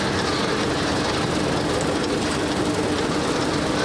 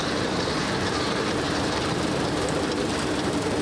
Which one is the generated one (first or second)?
second